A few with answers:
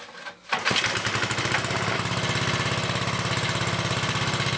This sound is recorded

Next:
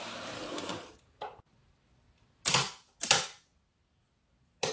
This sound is recorded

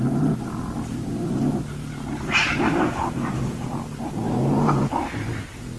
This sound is recorded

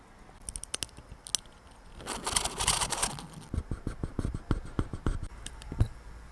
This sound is recorded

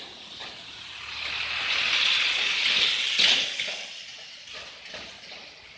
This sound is recorded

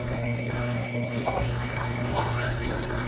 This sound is remade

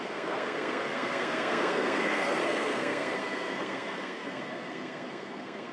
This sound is remade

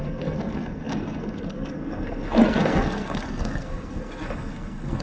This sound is remade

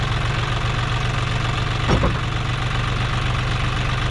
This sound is recorded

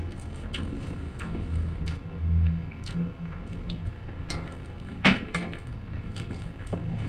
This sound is remade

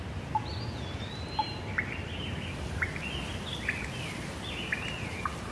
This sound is recorded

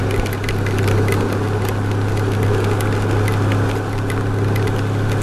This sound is recorded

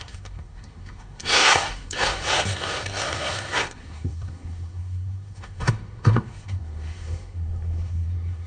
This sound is remade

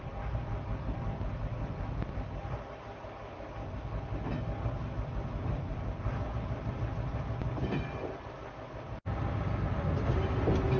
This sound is recorded